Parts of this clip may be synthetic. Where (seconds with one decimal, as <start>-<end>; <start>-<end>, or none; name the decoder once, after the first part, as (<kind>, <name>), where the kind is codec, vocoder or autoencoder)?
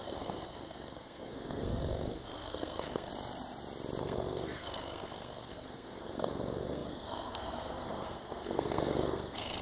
0.0-3.1 (codec, SNAC); 4.0-9.6